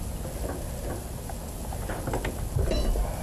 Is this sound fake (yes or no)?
no